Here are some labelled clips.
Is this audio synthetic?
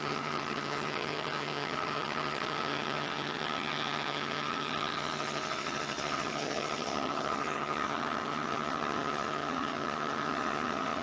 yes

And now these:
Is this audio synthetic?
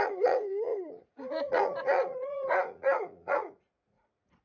yes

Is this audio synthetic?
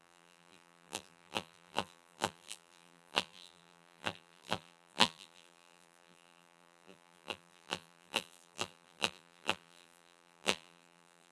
yes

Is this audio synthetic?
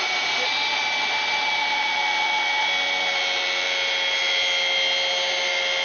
no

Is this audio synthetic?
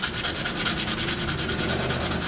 no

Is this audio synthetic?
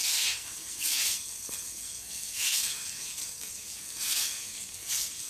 yes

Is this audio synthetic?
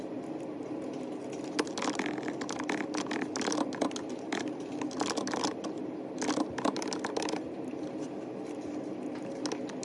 no